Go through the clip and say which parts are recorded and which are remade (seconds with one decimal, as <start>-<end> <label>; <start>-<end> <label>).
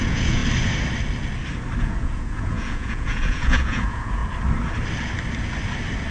0.0-0.4 remade; 0.4-1.8 recorded; 1.8-4.2 remade; 4.2-6.1 recorded